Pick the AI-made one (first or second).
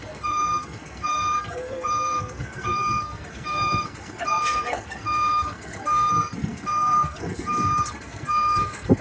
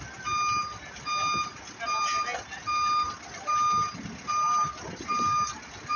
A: first